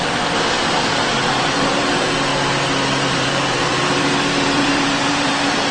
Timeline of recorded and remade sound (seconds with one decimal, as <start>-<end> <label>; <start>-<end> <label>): 0.0-2.3 remade; 2.3-3.1 recorded; 3.1-5.7 remade